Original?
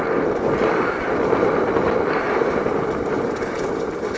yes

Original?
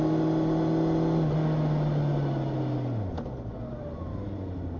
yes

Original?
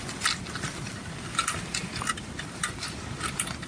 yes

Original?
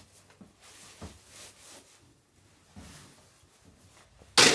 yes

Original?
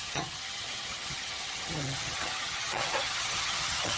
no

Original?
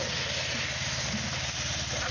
yes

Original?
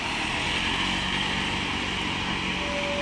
yes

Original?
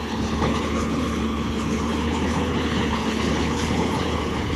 no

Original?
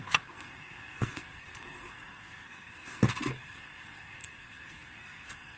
no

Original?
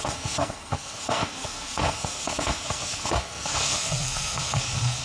no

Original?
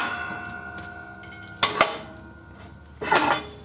yes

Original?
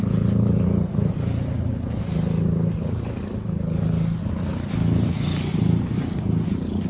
yes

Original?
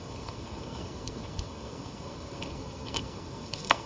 no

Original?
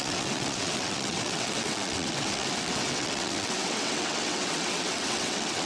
no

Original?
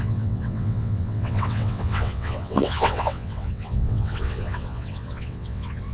no